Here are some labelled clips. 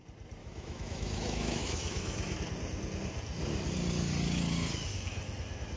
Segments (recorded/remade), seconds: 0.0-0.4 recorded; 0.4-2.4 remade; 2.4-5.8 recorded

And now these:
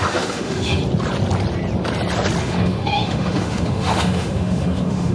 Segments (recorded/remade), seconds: 0.0-0.8 remade; 0.8-2.4 recorded; 2.4-5.1 remade